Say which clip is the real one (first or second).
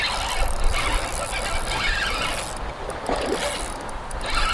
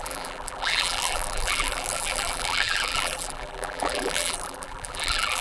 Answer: first